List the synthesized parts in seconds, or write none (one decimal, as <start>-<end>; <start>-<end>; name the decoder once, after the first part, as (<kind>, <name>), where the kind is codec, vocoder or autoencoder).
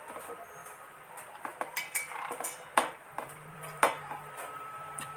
0.0-5.2 (vocoder, BigVGAN v2)